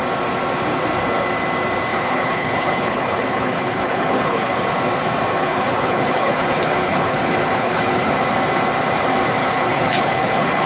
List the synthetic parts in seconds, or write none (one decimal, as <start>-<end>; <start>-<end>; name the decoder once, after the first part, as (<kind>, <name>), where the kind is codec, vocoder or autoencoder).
1.9-4.6 (codec, HILCodec); 5.3-8.1; 9.4-10.7